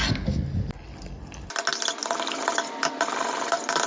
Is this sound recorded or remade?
recorded